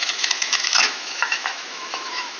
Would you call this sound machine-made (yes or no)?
yes